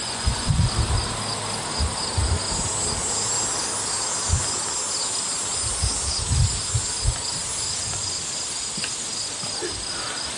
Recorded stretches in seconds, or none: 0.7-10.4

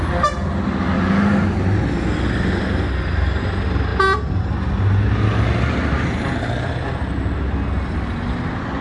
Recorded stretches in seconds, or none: 0.0-8.8

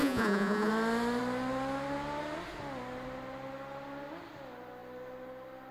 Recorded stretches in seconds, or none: 0.7-5.7

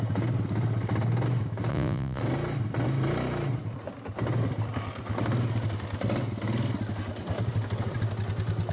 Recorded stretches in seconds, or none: 0.0-1.7; 2.2-8.7

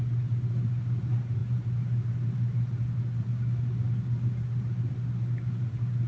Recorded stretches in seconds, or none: 0.0-6.1